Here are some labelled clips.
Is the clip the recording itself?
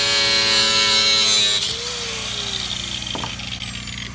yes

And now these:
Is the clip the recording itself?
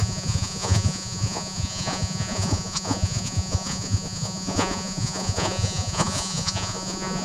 no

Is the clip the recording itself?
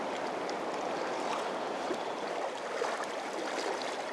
yes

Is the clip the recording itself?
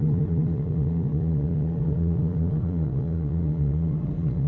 no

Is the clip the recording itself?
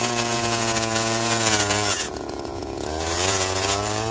no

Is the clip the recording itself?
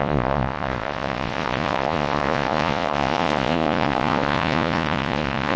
no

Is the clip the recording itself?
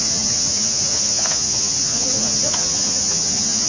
no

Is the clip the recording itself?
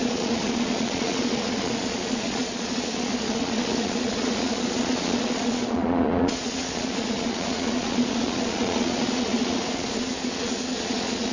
no